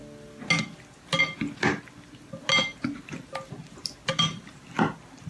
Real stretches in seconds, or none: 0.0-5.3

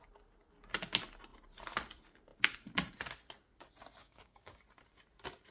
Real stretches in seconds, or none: 0.0-4.0; 4.6-5.5

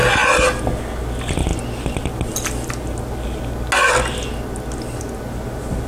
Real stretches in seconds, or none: 0.0-5.9

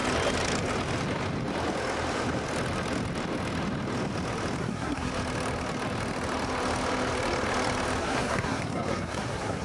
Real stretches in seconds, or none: 0.0-4.6; 5.1-8.0

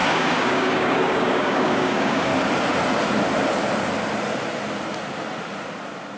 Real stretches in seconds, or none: 2.3-6.2

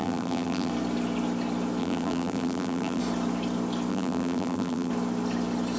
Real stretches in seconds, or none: 0.7-1.8; 3.0-3.9; 4.9-5.8